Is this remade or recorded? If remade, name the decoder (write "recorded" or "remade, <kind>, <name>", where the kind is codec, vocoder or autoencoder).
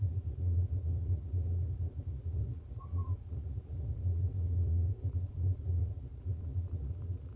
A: remade, vocoder, Vocos